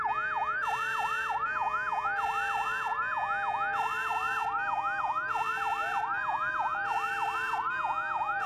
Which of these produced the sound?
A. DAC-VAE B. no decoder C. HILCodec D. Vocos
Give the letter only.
B